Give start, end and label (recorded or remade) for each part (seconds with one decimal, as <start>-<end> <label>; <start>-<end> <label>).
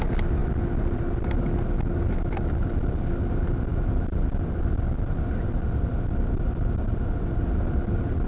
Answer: 0.0-8.3 recorded